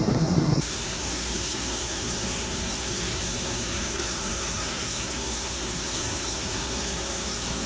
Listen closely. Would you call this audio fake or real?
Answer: fake